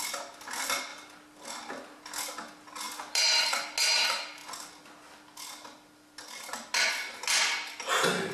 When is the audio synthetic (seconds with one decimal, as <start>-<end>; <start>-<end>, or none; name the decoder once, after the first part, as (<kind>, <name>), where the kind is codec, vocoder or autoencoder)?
none